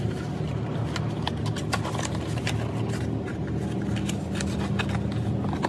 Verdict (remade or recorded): recorded